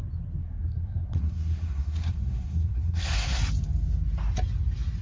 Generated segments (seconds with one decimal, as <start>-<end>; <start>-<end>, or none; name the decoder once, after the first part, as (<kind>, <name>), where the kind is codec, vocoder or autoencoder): 0.4-3.4 (codec, SNAC)